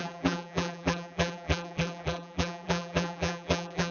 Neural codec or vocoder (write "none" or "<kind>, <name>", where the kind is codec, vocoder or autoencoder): vocoder, BigVGAN v2